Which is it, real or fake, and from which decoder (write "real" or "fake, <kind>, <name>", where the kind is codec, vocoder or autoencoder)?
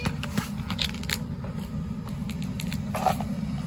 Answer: real